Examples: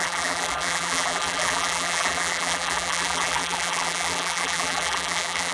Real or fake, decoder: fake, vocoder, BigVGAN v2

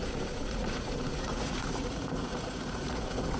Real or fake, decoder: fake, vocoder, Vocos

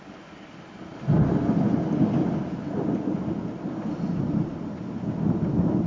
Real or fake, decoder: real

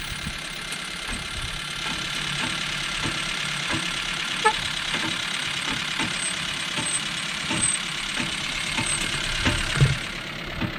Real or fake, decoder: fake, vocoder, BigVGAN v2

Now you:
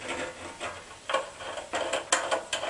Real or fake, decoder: real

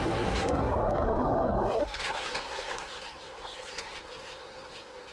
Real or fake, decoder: fake, codec, SNAC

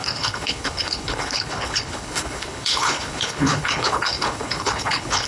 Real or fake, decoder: fake, codec, HILCodec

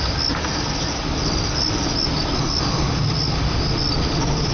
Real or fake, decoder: real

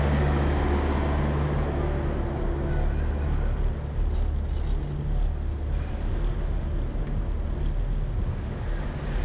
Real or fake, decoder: real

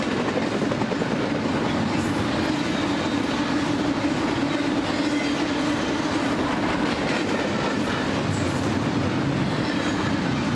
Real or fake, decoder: real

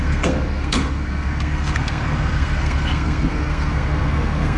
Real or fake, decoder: fake, codec, SNAC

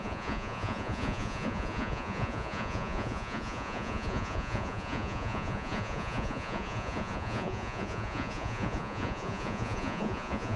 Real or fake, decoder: fake, vocoder, Vocos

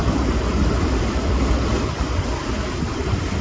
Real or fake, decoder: real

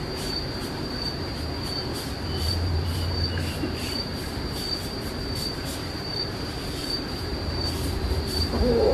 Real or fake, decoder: fake, vocoder, BigVGAN v2